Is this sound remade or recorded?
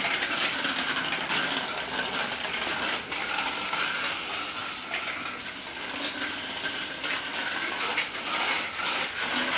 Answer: recorded